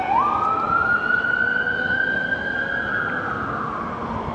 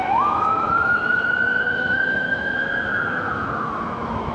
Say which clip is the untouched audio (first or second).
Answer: first